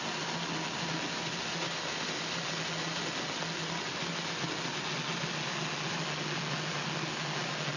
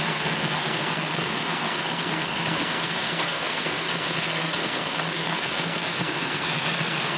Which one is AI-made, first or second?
second